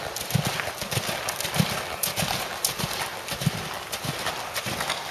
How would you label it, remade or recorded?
recorded